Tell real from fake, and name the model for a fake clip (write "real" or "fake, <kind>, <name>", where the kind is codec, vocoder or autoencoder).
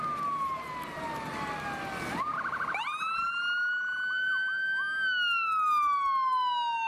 real